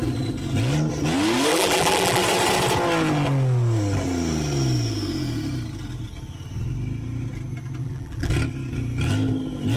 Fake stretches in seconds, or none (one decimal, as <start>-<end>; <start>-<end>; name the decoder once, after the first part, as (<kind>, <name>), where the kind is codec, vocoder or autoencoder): 1.5-2.2 (vocoder, BigVGAN v2); 7.8-8.3